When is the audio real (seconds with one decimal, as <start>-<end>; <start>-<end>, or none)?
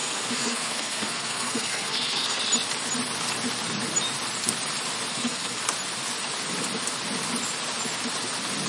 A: 2.4-5.1; 5.6-8.7